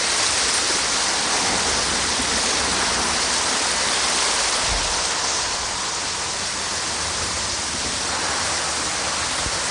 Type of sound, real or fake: real